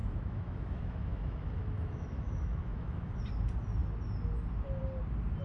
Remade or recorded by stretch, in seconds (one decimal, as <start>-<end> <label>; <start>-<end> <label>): 0.0-3.2 remade; 3.2-5.4 recorded